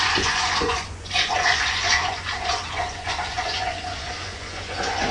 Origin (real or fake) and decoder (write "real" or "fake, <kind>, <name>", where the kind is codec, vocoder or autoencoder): fake, vocoder, Vocos